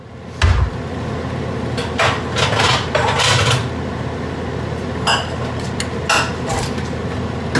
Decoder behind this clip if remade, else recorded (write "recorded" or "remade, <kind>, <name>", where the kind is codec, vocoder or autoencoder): recorded